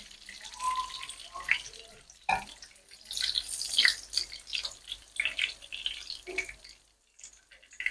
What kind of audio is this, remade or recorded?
recorded